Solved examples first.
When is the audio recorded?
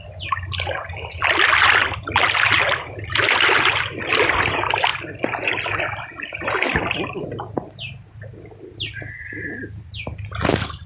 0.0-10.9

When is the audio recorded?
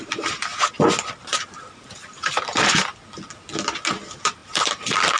0.5-1.2; 2.9-3.9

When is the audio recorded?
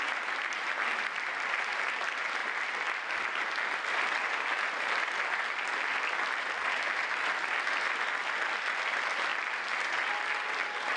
0.0-11.0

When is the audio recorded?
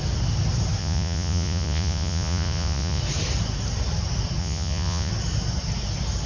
0.0-0.8; 3.0-4.4; 5.1-6.3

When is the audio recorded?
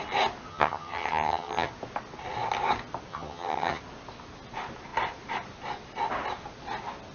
0.0-0.5; 1.7-3.1; 3.8-7.1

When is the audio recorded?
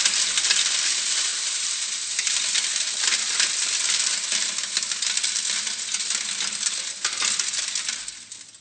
0.0-1.3; 1.8-8.6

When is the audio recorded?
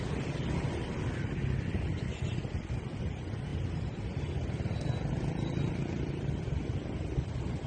0.0-7.7